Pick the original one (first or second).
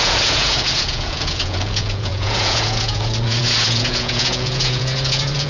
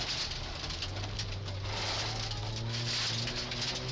second